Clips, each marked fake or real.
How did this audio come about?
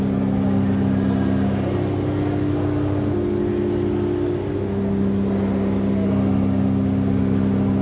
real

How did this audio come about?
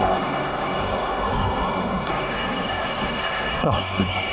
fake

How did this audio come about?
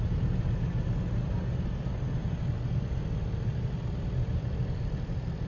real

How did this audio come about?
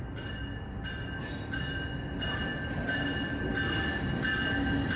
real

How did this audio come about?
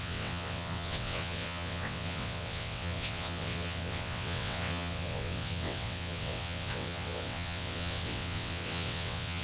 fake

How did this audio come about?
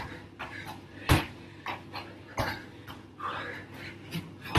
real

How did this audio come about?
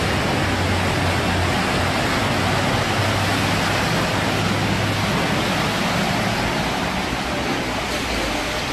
real